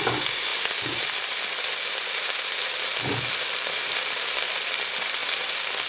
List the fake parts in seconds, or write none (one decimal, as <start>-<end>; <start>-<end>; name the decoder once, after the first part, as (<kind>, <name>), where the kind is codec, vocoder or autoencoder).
0.0-5.9 (vocoder, BigVGAN v2)

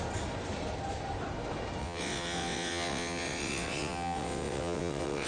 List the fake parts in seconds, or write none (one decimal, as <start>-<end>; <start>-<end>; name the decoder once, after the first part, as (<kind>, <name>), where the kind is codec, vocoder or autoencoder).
1.8-5.3 (vocoder, WaveNeXt)

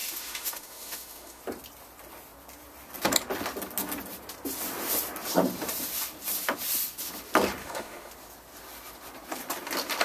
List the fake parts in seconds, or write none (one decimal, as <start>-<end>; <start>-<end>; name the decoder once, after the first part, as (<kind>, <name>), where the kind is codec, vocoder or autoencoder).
0.0-1.4 (autoencoder, DAC-VAE); 7.6-8.1

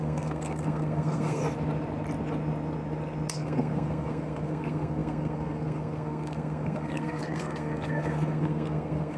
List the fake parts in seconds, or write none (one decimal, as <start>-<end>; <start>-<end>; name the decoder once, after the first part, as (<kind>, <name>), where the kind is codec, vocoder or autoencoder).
0.0-1.4 (codec, SNAC); 3.3-9.2

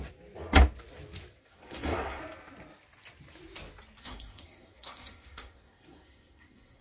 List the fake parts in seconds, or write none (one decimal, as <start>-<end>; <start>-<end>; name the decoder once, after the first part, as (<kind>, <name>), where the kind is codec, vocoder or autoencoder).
1.4-2.2 (codec, SNAC); 4.0-6.8